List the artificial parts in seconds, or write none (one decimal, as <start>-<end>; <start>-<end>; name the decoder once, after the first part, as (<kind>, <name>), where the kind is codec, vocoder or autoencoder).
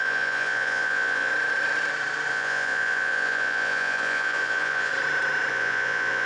0.0-1.3 (vocoder, Vocos); 2.3-4.9; 5.5-6.3